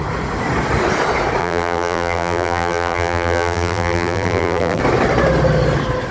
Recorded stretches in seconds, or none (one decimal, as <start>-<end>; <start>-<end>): 0.0-1.4; 4.8-6.1